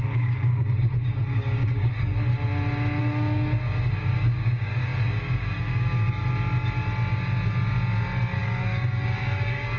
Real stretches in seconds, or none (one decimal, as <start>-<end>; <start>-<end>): 2.3-3.0; 6.2-8.4